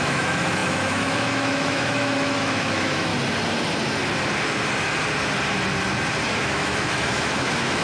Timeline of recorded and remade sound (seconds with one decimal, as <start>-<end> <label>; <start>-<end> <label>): 0.0-3.1 remade; 3.1-6.4 recorded; 6.4-7.8 remade